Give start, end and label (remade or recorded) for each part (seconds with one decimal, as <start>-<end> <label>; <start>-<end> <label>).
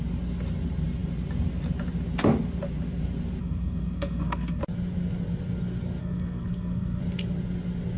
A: 0.0-3.4 recorded; 3.4-4.6 remade; 4.6-6.0 recorded; 6.0-7.0 remade; 7.0-8.0 recorded